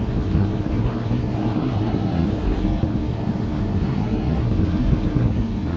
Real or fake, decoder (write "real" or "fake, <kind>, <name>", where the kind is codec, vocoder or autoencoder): fake, codec, SNAC